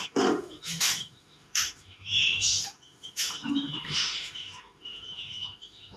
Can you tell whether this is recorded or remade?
remade